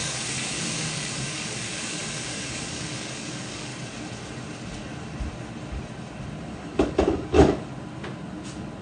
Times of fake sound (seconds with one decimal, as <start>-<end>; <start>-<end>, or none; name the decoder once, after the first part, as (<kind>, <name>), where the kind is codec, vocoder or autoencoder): 0.0-3.7 (codec, DAC); 6.5-7.7